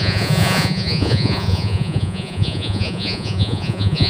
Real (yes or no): no